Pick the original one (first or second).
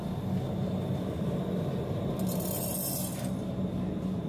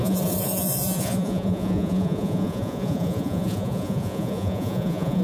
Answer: first